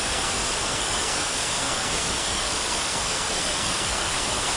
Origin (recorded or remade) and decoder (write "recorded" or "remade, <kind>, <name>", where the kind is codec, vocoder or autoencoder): remade, codec, SNAC